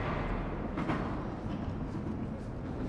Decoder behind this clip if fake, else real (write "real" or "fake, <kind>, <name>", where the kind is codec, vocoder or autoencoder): real